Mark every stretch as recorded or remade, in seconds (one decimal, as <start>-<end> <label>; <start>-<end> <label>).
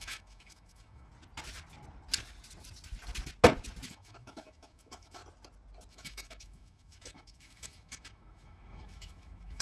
0.0-1.1 remade; 1.1-3.9 recorded; 3.9-5.2 remade; 5.2-5.9 recorded; 5.9-9.6 remade